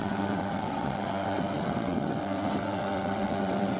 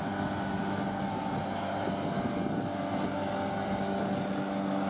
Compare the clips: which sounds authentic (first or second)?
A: second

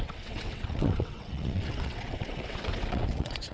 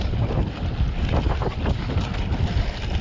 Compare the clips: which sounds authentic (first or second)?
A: second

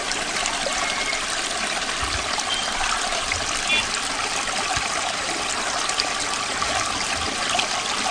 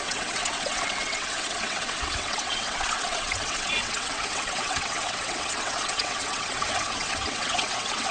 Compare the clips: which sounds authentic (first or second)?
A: first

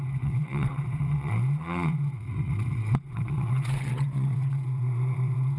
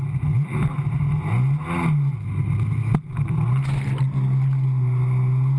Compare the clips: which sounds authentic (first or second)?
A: second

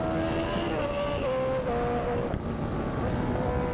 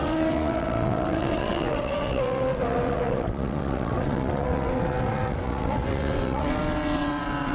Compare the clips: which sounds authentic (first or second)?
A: first